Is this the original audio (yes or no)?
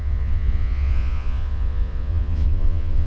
no